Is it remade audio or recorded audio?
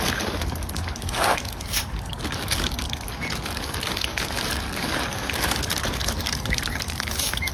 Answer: remade